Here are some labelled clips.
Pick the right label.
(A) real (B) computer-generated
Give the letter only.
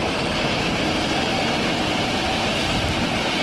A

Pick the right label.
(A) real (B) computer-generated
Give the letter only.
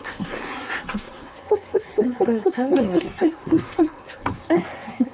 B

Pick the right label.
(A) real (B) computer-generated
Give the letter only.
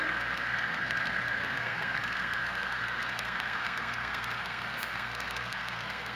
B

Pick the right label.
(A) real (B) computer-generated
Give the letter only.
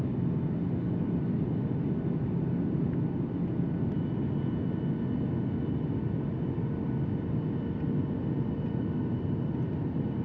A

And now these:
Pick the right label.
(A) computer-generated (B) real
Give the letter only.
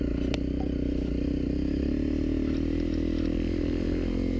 B